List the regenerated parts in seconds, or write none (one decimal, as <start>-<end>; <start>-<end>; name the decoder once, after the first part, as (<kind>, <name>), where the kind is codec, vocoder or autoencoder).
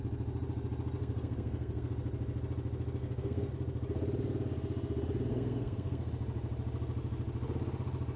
1.0-1.9 (codec, SNAC); 3.0-3.5; 5.3-6.1